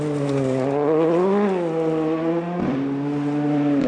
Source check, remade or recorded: recorded